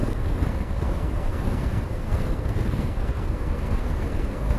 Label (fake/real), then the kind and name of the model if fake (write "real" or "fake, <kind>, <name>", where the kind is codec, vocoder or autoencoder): fake, codec, SNAC